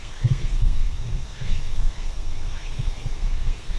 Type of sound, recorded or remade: remade